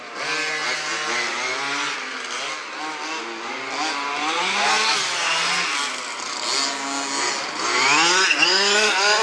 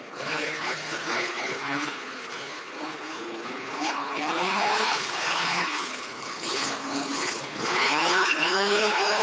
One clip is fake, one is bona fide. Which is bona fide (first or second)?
first